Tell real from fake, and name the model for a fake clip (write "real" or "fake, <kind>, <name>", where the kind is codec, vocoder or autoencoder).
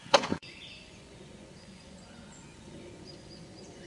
fake, vocoder, Vocos